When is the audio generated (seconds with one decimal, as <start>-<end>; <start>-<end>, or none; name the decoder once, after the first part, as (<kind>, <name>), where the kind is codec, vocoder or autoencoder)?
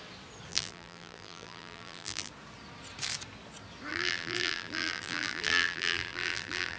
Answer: 0.5-2.3 (vocoder, BigVGAN v2); 3.9-6.8